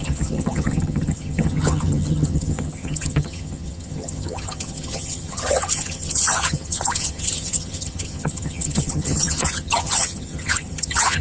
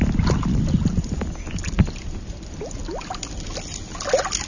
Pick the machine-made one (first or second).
first